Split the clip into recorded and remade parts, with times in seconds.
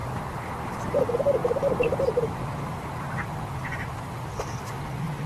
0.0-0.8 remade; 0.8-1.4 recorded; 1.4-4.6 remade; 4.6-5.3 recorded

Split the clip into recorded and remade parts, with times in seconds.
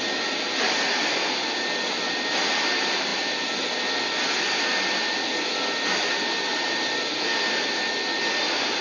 0.0-6.5 recorded; 6.5-7.9 remade; 7.9-8.8 recorded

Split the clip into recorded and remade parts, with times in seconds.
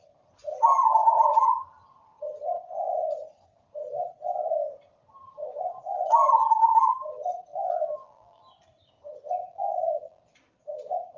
0.0-7.5 recorded; 7.5-8.4 remade; 8.4-9.5 recorded; 9.5-10.2 remade; 10.2-11.2 recorded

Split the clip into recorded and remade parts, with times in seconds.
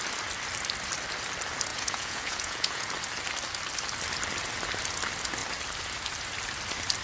0.0-1.7 recorded; 1.7-2.9 remade; 2.9-7.0 recorded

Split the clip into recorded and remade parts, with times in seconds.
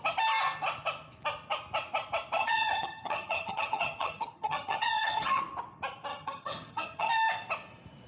0.0-2.4 recorded; 2.4-5.4 remade; 5.4-6.1 recorded; 6.1-7.1 remade; 7.1-8.1 recorded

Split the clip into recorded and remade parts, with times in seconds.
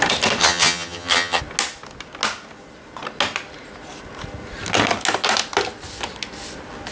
0.0-0.4 recorded; 0.4-1.4 remade; 1.4-6.9 recorded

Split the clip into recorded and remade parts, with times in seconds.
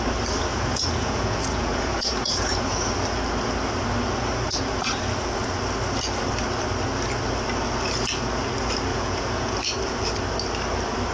0.0-0.5 recorded; 0.5-2.7 remade; 2.7-8.9 recorded; 8.9-9.5 remade; 9.5-11.1 recorded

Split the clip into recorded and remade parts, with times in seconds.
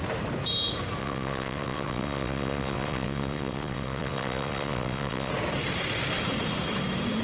0.0-1.0 recorded; 1.0-5.3 remade; 5.3-7.2 recorded